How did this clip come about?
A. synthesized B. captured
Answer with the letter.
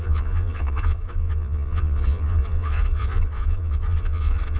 A